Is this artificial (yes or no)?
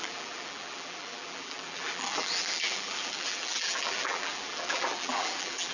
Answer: yes